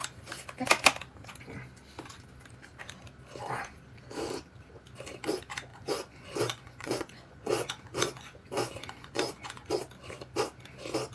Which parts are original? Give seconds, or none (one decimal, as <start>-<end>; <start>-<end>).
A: 0.0-5.7; 9.7-11.1